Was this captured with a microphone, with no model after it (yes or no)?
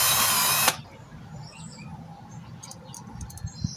yes